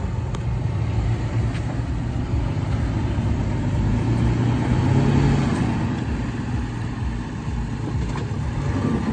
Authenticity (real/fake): real